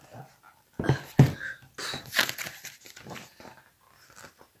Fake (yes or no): no